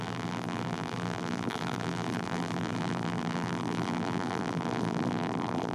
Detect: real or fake fake